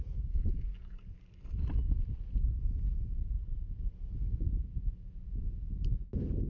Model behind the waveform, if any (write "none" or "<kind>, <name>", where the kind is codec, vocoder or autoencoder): none